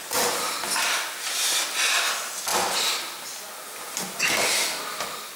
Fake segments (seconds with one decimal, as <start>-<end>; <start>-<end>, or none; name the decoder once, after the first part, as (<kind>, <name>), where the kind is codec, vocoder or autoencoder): none